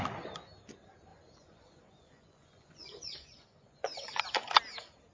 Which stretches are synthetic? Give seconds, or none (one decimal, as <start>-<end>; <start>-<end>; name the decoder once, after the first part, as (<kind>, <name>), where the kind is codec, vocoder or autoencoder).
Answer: 1.1-4.2 (vocoder, Vocos)